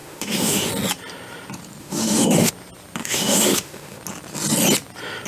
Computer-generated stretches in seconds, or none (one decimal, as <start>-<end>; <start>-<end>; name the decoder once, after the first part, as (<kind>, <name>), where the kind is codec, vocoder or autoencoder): 0.0-0.7 (autoencoder, DAC-VAE); 1.8-2.5; 3.0-4.0

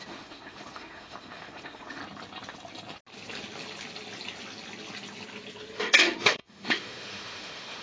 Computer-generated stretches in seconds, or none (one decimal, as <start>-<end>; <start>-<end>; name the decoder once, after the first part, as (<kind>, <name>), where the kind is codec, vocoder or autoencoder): 0.0-2.0 (autoencoder, DAC-VAE); 5.8-7.8

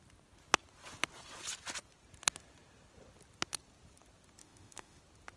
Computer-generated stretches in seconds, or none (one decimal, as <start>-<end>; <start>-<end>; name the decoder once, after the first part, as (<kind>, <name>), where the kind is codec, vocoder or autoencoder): 4.4-5.0 (autoencoder, DAC-VAE)

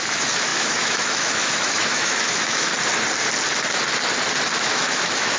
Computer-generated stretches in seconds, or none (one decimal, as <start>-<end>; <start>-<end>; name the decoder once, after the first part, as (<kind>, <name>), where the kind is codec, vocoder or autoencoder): 0.0-2.7 (autoencoder, DAC-VAE); 4.6-5.4